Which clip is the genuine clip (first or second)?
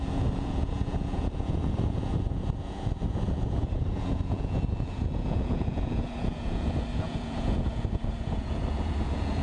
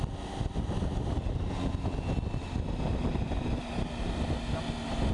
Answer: second